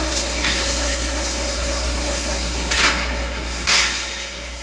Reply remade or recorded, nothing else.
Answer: remade